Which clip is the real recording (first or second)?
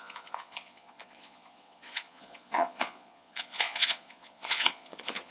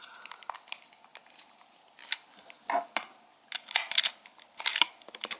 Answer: second